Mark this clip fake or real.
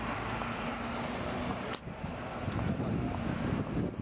real